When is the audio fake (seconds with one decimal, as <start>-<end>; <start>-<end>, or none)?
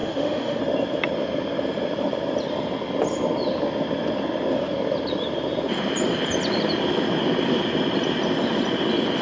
0.0-0.6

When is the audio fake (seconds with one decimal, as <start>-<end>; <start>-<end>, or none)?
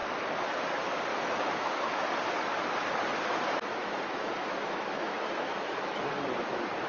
1.1-2.0; 3.8-6.1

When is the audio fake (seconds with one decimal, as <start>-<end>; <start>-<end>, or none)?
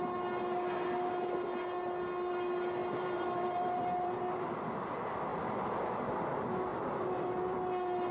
2.8-4.2; 6.7-7.6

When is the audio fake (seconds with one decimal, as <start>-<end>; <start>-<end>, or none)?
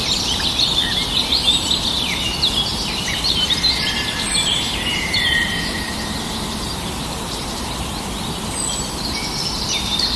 2.7-7.9